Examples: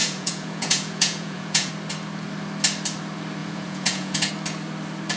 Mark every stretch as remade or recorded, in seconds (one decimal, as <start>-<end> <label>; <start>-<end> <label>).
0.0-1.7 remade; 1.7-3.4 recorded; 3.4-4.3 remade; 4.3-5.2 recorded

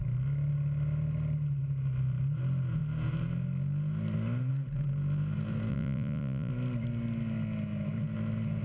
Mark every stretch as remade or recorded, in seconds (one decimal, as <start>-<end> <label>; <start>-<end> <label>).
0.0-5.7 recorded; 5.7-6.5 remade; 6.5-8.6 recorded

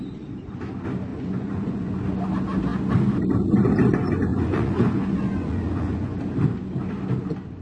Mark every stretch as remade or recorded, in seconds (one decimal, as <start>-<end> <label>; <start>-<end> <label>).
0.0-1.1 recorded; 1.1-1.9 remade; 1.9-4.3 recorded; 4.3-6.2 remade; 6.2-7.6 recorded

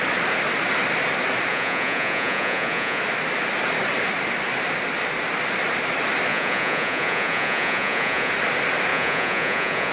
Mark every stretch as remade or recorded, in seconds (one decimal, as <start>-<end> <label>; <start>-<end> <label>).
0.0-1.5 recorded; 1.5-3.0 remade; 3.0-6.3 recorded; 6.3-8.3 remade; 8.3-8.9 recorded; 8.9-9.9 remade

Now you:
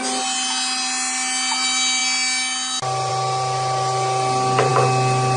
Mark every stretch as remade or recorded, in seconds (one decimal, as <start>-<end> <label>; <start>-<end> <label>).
0.0-5.4 recorded